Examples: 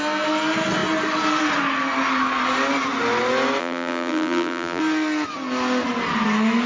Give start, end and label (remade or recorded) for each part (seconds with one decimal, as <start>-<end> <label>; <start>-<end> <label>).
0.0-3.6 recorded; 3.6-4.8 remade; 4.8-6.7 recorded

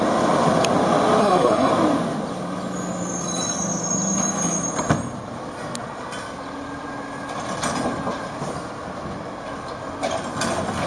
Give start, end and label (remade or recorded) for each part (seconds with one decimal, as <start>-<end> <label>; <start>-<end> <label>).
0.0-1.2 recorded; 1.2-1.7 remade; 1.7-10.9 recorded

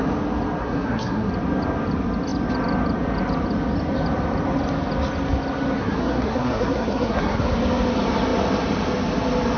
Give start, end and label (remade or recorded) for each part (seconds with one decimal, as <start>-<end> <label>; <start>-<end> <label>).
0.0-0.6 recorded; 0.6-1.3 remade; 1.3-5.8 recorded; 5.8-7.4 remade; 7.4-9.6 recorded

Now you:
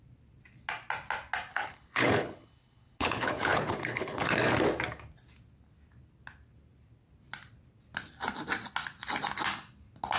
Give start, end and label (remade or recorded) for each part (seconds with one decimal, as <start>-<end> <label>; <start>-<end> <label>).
0.0-1.5 recorded; 1.5-4.3 remade; 4.3-10.2 recorded

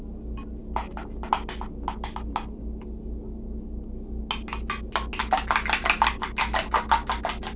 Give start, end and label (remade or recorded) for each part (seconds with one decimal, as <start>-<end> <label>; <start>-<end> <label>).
0.0-7.6 recorded